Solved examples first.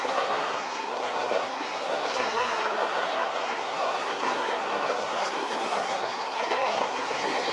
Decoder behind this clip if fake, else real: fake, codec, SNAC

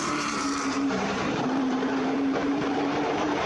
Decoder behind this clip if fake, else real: fake, vocoder, BigVGAN v2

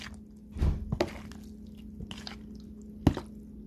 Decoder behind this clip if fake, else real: real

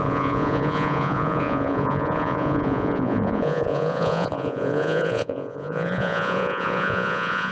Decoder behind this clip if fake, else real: fake, vocoder, Vocos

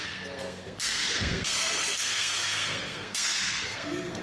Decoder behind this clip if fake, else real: fake, codec, SNAC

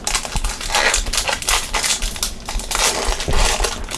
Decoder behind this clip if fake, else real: real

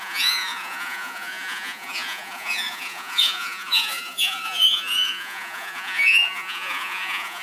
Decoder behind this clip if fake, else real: fake, vocoder, Vocos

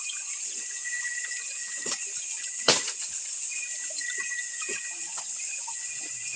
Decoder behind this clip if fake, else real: fake, vocoder, Vocos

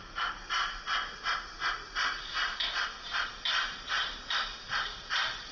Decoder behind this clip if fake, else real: real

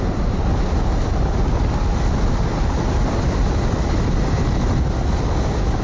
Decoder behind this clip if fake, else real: real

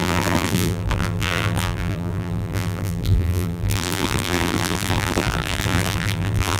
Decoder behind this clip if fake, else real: fake, vocoder, BigVGAN v2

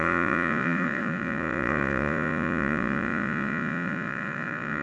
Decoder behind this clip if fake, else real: fake, vocoder, Vocos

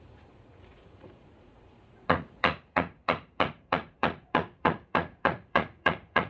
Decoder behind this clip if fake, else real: fake, vocoder, Vocos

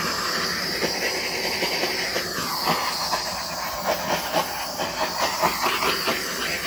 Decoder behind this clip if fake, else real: real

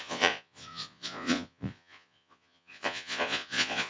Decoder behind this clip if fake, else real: fake, vocoder, Vocos